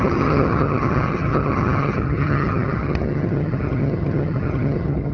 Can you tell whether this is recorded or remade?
remade